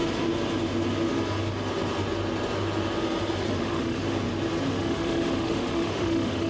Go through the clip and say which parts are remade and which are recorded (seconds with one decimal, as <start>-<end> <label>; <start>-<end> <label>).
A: 0.0-3.6 recorded; 3.6-4.0 remade; 4.0-4.8 recorded; 4.8-6.5 remade